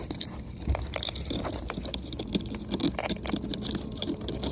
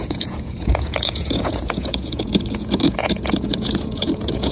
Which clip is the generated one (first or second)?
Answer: second